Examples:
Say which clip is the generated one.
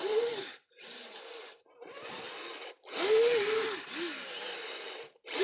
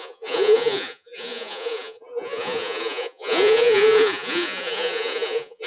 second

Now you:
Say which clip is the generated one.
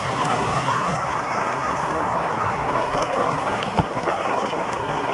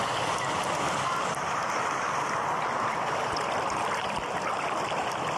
first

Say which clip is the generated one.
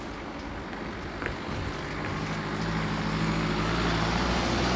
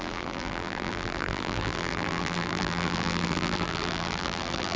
second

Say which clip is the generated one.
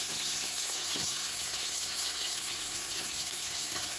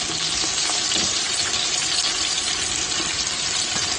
first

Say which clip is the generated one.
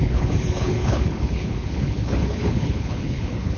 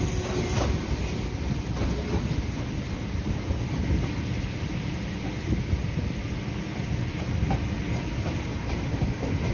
first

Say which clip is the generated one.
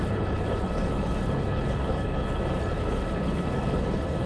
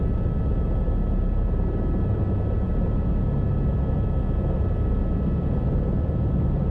first